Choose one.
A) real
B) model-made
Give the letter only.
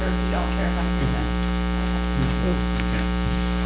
A